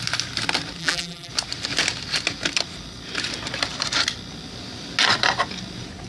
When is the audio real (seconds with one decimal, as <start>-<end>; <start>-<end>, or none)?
0.0-0.8; 1.3-6.1